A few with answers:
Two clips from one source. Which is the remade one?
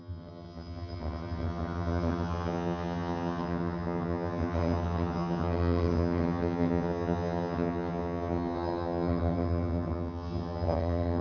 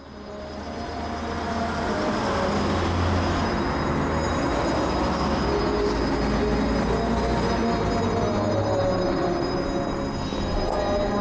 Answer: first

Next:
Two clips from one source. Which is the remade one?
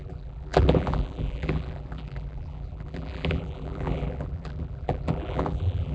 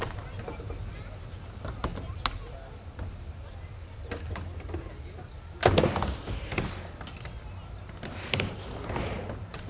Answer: first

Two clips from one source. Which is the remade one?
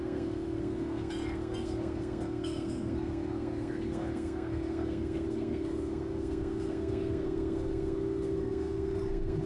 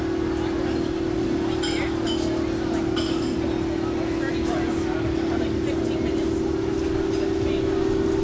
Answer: first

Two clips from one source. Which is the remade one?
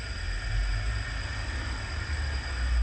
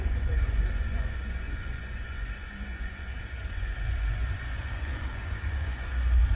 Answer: second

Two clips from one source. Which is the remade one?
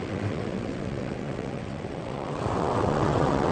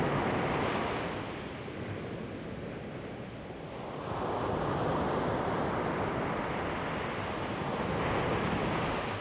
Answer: first